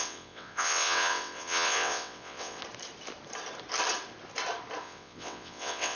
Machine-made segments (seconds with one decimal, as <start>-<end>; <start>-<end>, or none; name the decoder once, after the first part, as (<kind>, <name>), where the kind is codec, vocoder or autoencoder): 0.0-2.6 (vocoder, WaveNeXt); 4.8-6.0